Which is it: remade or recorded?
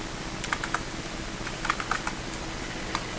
recorded